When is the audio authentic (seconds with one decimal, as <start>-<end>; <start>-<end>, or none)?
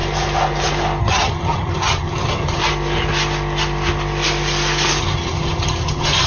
0.0-1.0; 2.6-5.0